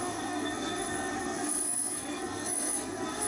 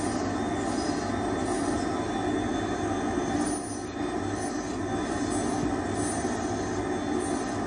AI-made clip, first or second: first